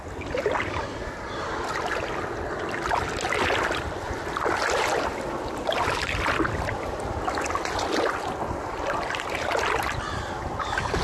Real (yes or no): yes